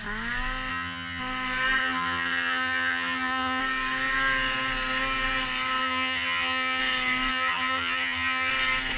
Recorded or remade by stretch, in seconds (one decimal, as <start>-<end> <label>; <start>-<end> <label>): 0.0-0.7 recorded; 0.7-1.2 remade; 1.2-1.8 recorded; 1.8-3.6 remade; 3.6-5.8 recorded; 5.8-6.8 remade; 6.8-7.3 recorded; 7.3-8.5 remade; 8.5-9.0 recorded